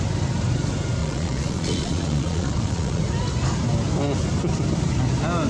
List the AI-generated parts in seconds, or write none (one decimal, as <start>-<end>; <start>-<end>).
1.0-3.0